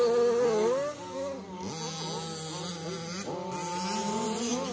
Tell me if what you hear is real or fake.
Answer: real